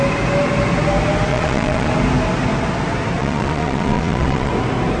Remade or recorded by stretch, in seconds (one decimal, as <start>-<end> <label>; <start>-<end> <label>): 0.0-1.3 recorded; 1.3-1.9 remade; 1.9-3.2 recorded; 3.2-4.5 remade; 4.5-5.0 recorded